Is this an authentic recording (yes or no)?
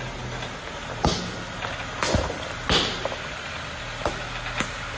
yes